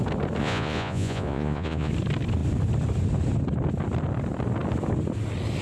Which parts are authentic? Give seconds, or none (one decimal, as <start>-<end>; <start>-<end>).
0.0-0.4; 1.9-5.6